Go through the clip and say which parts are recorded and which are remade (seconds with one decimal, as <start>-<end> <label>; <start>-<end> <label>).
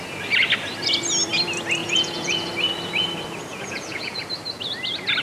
0.0-1.8 recorded; 1.8-2.5 remade; 2.5-3.5 recorded; 3.5-4.2 remade; 4.2-5.2 recorded